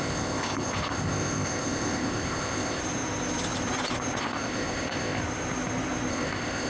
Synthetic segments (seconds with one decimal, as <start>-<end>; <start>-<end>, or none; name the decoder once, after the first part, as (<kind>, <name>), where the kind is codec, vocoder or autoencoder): 0.0-2.8 (codec, ZipCodec); 4.2-5.2; 6.1-6.7